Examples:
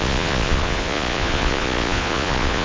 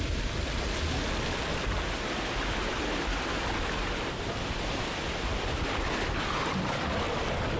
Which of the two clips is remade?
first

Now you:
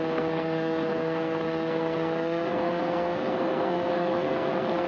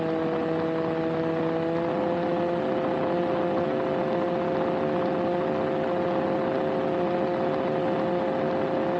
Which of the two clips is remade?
first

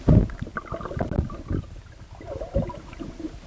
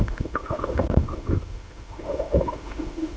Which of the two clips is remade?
second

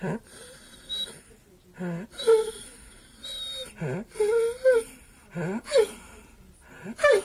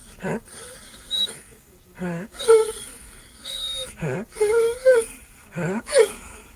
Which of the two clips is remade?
second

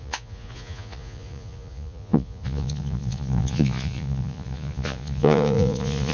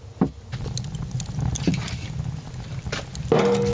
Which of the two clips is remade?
first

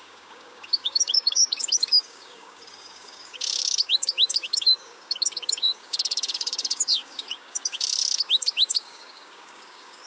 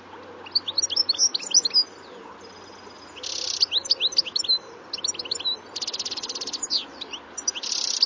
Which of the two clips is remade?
first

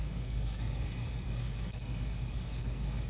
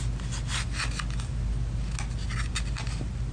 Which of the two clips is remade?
first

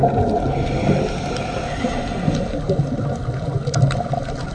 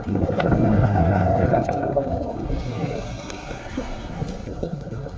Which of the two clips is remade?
second